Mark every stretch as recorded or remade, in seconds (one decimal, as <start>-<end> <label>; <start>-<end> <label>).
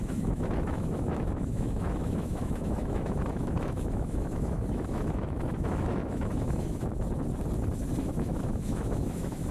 0.0-6.9 remade; 6.9-8.0 recorded; 8.0-9.5 remade